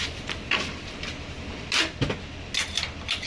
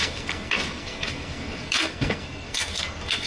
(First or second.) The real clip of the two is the first